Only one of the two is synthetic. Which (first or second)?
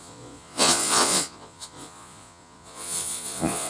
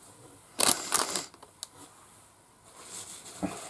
first